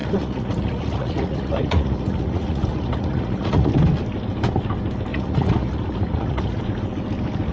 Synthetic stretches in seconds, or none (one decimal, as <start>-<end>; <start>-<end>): 0.0-3.7; 5.1-6.6